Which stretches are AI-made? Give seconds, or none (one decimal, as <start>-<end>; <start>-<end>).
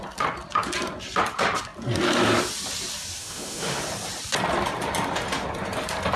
3.2-3.8